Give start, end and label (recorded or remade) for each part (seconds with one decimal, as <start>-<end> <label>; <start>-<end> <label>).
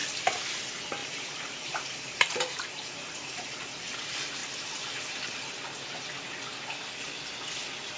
0.0-1.0 recorded; 1.0-3.6 remade; 3.6-8.0 recorded